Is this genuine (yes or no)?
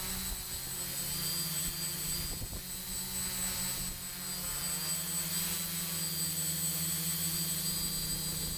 yes